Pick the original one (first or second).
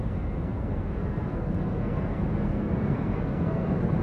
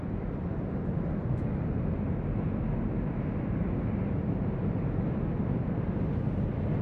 second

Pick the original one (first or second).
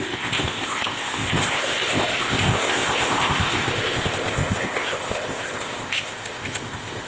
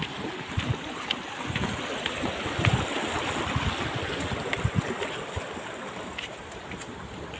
second